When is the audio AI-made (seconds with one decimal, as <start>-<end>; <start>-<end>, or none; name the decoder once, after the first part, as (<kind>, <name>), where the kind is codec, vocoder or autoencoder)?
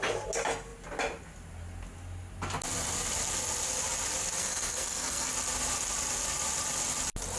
4.4-5.3 (codec, SNAC)